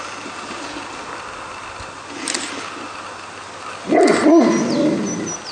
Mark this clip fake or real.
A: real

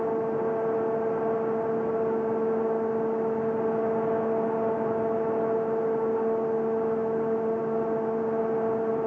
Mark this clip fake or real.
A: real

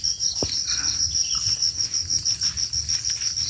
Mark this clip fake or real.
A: real